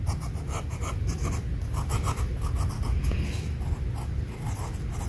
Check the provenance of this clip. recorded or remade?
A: recorded